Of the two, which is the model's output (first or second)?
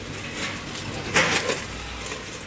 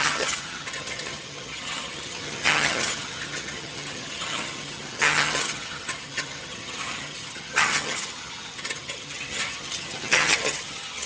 second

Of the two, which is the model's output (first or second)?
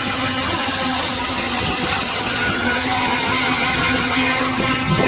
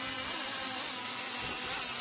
first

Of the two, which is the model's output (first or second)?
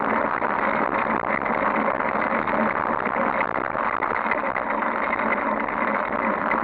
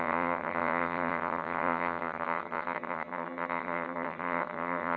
second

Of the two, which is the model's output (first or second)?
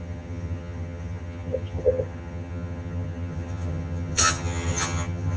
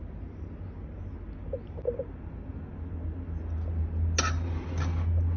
first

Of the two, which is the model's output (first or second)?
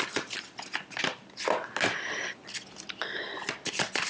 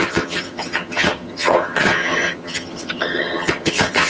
second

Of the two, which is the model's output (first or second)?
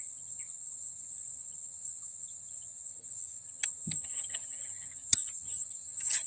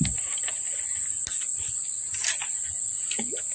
first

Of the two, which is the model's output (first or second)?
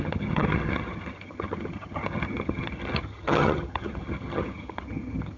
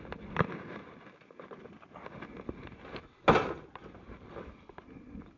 first